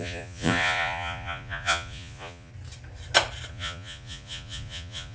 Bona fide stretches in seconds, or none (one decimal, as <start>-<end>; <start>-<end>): 2.5-3.5

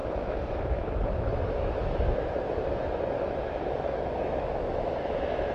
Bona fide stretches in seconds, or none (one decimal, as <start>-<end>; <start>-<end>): none

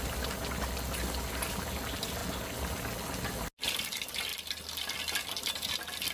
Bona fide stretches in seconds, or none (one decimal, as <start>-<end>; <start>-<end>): 0.0-6.1

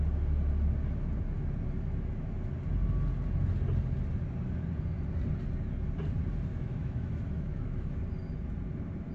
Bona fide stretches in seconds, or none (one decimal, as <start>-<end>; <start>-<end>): 0.0-6.5; 7.9-9.1